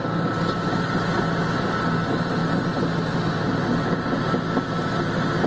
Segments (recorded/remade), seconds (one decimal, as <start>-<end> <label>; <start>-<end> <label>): 0.0-5.5 recorded